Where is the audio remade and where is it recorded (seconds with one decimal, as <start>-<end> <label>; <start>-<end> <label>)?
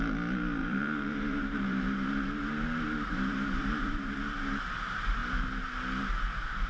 0.0-0.6 recorded; 0.6-4.6 remade; 4.6-6.7 recorded